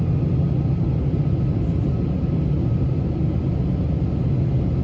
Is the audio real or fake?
real